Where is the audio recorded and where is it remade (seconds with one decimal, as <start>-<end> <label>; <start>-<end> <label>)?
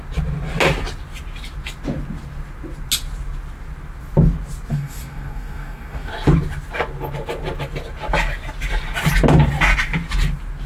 0.0-4.7 recorded; 4.7-6.1 remade; 6.1-10.7 recorded